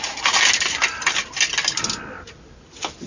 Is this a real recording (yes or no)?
yes